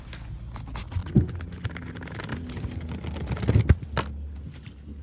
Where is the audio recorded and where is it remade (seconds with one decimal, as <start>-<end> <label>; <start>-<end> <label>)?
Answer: 0.0-5.0 recorded